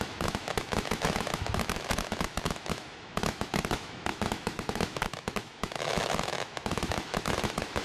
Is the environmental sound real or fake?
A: fake